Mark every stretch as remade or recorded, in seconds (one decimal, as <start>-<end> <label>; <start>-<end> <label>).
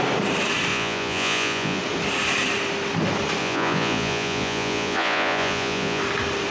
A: 0.0-0.7 recorded; 0.7-1.8 remade; 1.8-3.4 recorded; 3.4-6.0 remade; 6.0-6.5 recorded